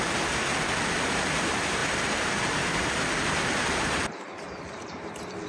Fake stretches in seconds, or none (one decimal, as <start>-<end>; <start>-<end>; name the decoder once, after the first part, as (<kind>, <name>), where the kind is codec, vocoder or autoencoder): 0.5-1.3 (vocoder, BigVGAN v2); 1.8-5.1